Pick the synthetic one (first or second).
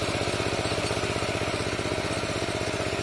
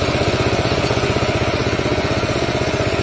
second